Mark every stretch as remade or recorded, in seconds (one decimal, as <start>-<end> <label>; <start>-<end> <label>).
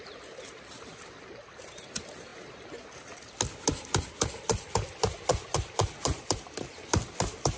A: 0.0-7.6 recorded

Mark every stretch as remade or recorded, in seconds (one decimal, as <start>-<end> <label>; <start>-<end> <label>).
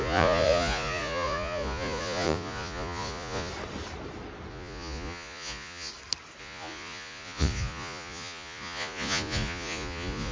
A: 0.0-3.5 remade; 3.5-4.5 recorded; 4.5-5.9 remade; 5.9-6.4 recorded; 6.4-10.3 remade